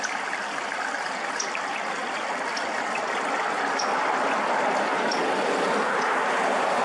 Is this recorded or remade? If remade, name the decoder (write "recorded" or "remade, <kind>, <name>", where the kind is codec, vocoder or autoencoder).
recorded